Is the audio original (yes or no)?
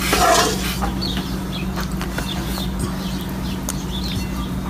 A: yes